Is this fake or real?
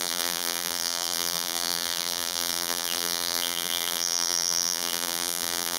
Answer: fake